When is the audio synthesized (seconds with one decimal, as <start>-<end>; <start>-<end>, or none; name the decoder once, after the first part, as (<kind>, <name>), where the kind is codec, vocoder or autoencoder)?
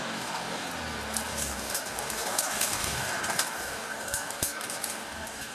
0.0-0.7 (codec, DAC); 1.3-5.5